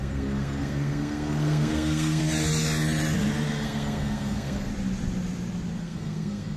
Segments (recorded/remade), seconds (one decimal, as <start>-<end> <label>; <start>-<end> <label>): 0.0-2.2 remade; 2.2-3.5 recorded; 3.5-4.7 remade; 4.7-5.8 recorded; 5.8-6.6 remade